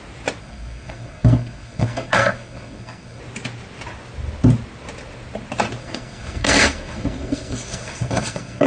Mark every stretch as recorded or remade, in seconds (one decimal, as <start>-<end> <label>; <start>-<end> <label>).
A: 0.0-0.4 recorded; 0.4-3.2 remade; 3.2-5.8 recorded; 5.8-8.7 remade